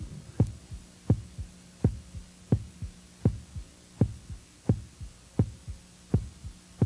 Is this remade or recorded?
recorded